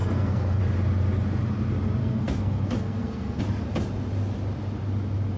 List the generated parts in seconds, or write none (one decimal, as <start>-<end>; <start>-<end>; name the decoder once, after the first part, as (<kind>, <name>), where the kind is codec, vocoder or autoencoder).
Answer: 0.0-0.6 (codec, SNAC); 2.0-3.4